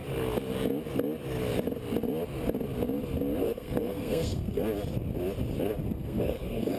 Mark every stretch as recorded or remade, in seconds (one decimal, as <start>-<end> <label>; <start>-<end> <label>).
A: 0.0-3.4 recorded; 3.4-4.6 remade; 4.6-5.8 recorded; 5.8-6.8 remade